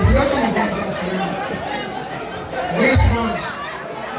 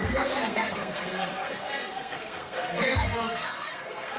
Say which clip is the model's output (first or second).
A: second